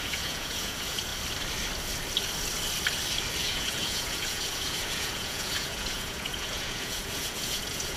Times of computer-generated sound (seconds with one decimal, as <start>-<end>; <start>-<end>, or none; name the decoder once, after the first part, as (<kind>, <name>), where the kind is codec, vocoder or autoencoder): 0.0-1.1 (vocoder, Vocos); 3.4-8.0

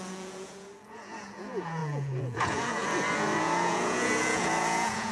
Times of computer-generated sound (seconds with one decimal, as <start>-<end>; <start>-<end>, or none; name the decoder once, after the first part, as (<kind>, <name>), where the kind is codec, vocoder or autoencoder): 0.0-5.1 (vocoder, Vocos)

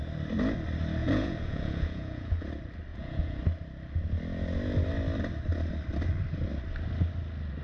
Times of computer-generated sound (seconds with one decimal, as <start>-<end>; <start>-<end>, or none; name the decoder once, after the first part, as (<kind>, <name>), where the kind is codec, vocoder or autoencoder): 1.0-2.5 (vocoder, Vocos); 2.9-3.4

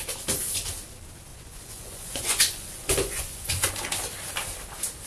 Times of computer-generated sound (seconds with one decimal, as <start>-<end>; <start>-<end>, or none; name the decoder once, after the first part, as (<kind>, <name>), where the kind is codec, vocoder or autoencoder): 1.3-3.7 (vocoder, Vocos)

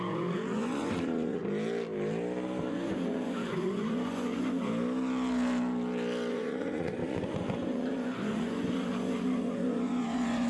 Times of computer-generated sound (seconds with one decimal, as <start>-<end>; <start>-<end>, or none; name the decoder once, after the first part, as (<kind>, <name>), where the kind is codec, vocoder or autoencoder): 0.0-1.4 (vocoder, Vocos); 2.7-4.7; 6.3-10.5